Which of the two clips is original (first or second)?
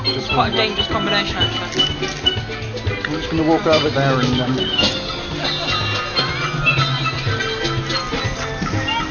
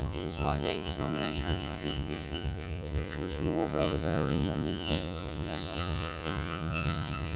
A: first